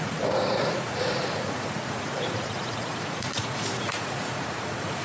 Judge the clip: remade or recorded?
remade